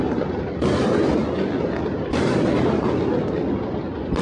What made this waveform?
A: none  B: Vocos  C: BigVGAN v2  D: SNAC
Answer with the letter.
A